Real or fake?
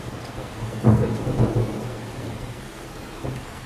fake